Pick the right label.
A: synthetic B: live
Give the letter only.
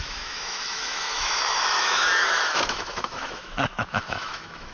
A